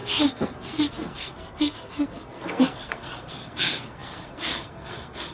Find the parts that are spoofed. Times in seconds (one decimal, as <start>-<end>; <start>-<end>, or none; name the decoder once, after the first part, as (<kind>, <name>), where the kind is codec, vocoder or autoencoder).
0.0-5.3 (codec, SNAC)